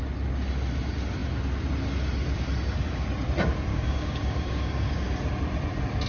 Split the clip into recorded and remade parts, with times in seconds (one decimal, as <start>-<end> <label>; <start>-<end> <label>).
0.0-3.7 recorded; 3.7-5.1 remade; 5.1-6.1 recorded